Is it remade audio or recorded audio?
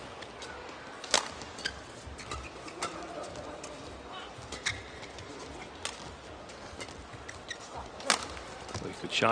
recorded